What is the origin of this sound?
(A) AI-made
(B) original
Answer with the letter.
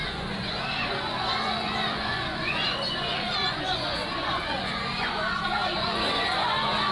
A